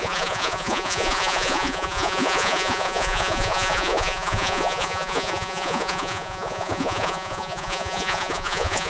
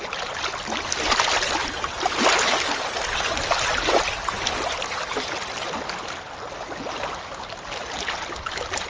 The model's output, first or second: first